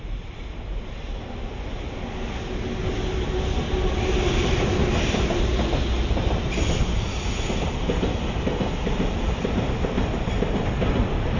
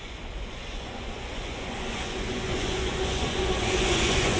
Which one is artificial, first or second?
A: second